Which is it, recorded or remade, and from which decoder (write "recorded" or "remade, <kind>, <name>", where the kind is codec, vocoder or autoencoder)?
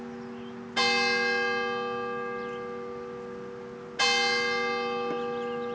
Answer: recorded